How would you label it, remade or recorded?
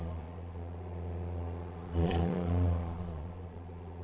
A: remade